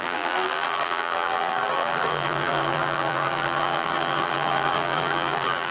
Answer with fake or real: fake